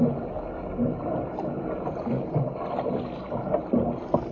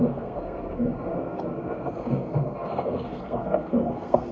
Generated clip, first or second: second